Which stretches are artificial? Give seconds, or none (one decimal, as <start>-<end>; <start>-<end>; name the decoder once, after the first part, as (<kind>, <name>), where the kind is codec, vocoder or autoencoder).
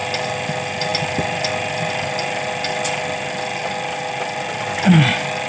none